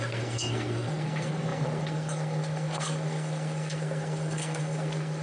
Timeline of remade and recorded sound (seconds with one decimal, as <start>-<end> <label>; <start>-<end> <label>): 0.0-5.2 remade